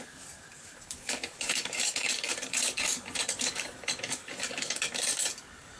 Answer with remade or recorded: remade